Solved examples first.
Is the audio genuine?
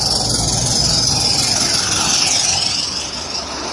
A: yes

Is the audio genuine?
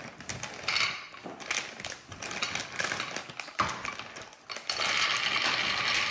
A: yes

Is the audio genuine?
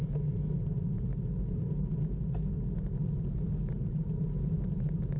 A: yes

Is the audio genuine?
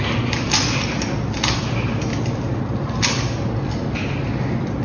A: yes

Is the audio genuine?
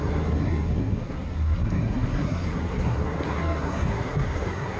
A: no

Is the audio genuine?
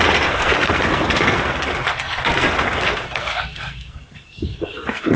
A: no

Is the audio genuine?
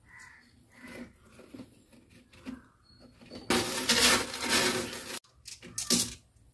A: yes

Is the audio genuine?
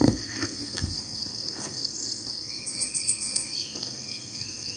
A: no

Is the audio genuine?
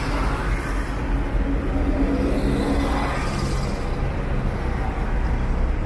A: yes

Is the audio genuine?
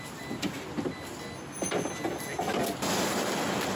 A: yes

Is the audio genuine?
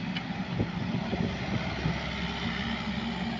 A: yes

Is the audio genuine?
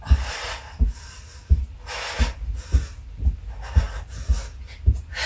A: yes